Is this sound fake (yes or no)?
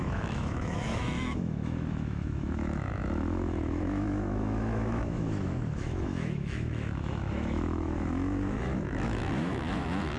yes